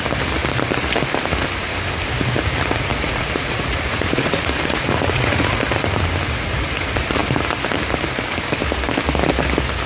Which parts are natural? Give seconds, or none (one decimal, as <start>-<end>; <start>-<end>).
0.0-2.9; 5.6-9.9